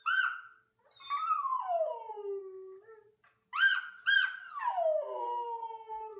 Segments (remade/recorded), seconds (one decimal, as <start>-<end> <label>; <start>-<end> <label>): 0.0-6.2 recorded